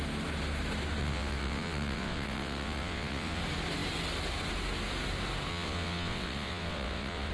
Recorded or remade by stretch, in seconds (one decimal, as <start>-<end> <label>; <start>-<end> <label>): 0.0-1.0 recorded; 1.0-3.4 remade; 3.4-5.5 recorded; 5.5-7.3 remade